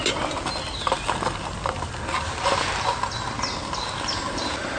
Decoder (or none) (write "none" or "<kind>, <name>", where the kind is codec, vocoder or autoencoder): none